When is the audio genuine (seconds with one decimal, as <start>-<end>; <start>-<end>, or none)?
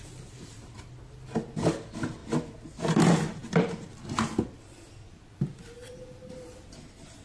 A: 0.0-7.2